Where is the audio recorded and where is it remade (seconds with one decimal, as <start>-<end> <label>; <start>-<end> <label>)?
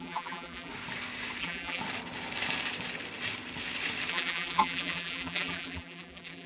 0.0-0.7 remade; 0.7-1.4 recorded; 1.4-1.8 remade; 1.8-4.1 recorded; 4.1-6.5 remade